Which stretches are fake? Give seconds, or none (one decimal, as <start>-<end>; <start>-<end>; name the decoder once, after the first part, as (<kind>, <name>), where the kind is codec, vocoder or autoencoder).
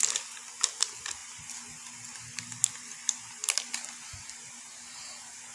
none